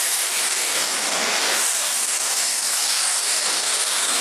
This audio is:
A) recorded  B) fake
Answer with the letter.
B